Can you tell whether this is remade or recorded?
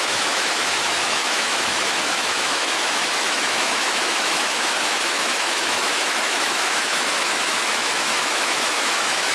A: remade